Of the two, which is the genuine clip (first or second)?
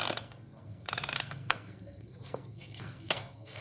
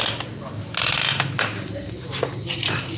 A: second